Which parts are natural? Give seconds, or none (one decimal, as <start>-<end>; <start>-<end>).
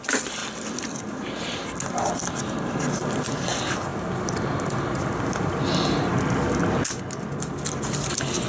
0.0-8.5